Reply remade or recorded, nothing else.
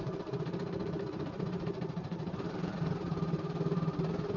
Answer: remade